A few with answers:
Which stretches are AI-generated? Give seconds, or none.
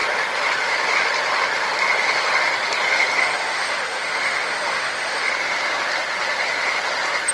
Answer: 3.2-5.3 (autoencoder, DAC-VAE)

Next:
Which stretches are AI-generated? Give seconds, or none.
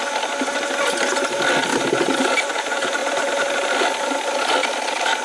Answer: none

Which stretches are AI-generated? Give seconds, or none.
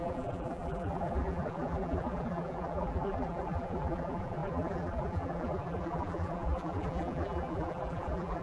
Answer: 0.0-8.4 (vocoder, BigVGAN v2)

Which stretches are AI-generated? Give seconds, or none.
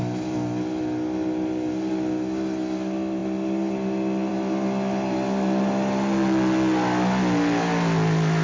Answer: none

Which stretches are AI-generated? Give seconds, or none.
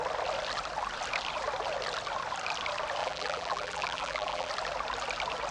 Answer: 3.0-4.5 (vocoder, BigVGAN v2)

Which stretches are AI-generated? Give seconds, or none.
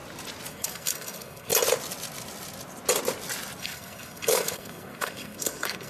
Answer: 0.5-1.5 (codec, SNAC); 3.6-5.9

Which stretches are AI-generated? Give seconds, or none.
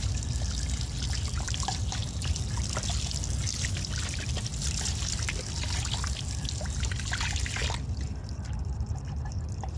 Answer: none